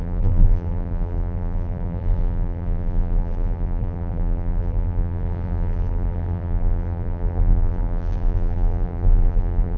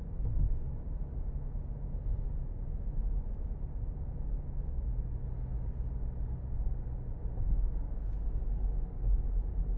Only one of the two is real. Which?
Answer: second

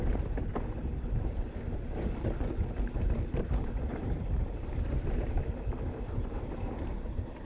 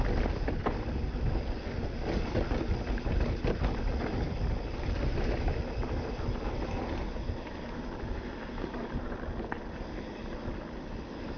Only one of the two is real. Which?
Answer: second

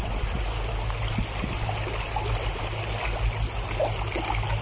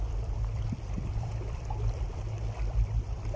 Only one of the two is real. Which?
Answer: first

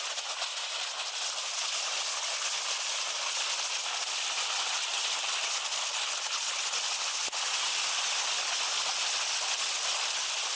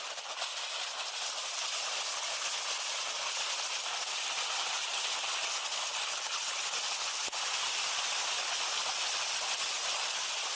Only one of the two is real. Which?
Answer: first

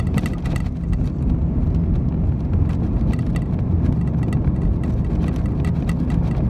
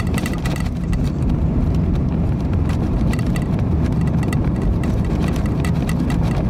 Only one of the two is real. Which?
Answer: first